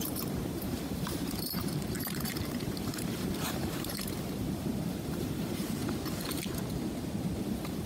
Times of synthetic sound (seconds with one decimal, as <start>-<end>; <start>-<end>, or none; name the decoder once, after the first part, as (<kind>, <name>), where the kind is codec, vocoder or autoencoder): 0.0-5.8 (vocoder, BigVGAN v2); 7.4-7.9